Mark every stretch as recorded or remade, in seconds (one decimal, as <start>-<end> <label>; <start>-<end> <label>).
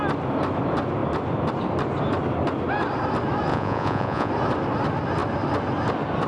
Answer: 0.0-3.5 recorded; 3.5-4.3 remade; 4.3-6.3 recorded